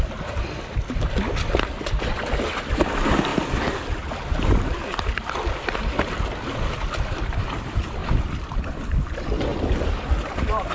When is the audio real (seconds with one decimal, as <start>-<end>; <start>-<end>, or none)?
0.0-8.0; 8.6-10.7